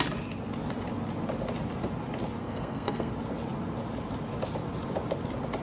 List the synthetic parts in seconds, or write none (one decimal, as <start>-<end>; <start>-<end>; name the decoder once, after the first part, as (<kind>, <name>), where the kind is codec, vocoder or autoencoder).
2.4-3.1 (codec, SNAC)